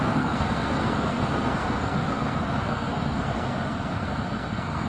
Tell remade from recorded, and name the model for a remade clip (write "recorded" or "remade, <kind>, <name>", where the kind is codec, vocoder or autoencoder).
remade, codec, SNAC